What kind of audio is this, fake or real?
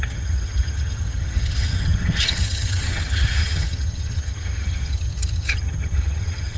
fake